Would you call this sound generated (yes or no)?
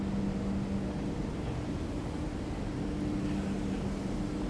no